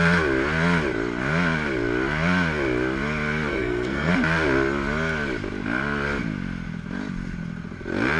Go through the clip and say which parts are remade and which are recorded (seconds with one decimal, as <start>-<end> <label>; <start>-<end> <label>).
0.0-3.5 recorded; 3.5-4.1 remade; 4.1-8.2 recorded